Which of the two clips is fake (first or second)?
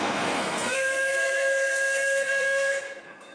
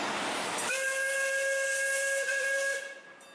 first